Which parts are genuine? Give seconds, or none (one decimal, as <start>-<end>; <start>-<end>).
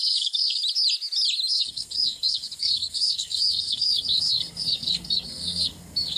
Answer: 0.6-1.5